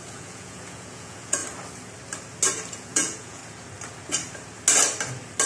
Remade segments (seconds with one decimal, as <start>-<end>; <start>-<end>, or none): 0.0-1.4; 2.7-3.4